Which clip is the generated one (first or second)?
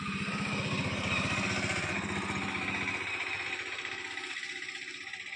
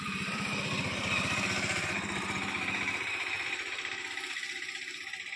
second